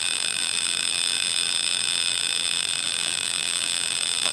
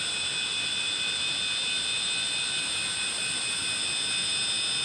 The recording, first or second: second